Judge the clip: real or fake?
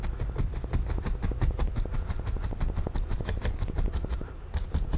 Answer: real